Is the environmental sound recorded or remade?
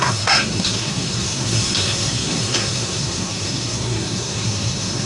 remade